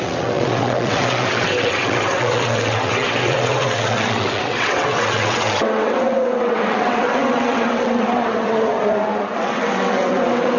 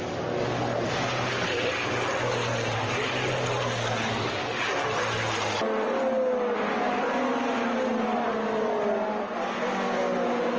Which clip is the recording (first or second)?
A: second